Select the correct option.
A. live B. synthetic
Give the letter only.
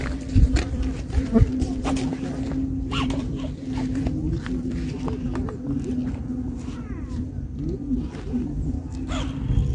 B